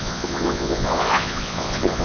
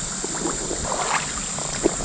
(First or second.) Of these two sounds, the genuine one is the second